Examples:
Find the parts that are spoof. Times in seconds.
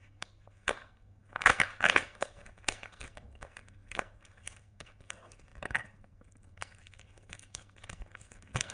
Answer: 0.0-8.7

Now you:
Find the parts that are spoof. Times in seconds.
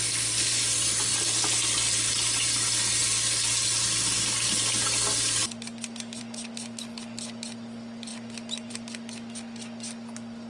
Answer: none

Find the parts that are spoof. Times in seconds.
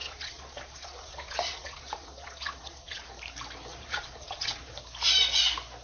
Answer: 0.0-3.1; 3.7-4.7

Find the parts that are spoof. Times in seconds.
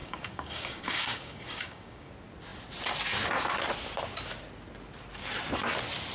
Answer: 0.0-2.1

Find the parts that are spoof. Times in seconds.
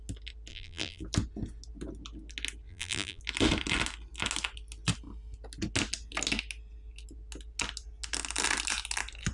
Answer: 0.5-1.0; 2.7-3.2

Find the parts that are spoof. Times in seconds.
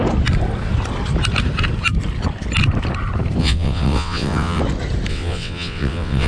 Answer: 3.4-4.6; 5.1-6.3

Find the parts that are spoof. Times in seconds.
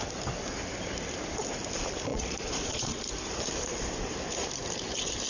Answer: 2.1-3.0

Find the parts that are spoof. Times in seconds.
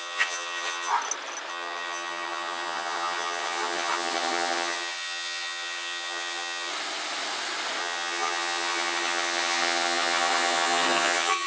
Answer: 0.0-0.9; 1.5-6.7; 7.8-11.5